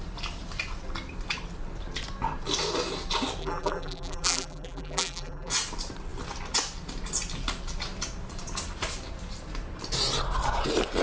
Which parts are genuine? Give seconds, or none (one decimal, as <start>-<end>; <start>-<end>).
0.0-3.4; 5.5-11.0